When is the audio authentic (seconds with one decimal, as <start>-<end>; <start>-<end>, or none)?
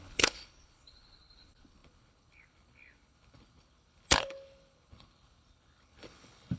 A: none